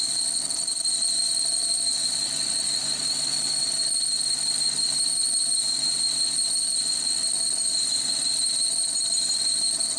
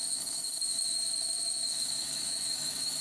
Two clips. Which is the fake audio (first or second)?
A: second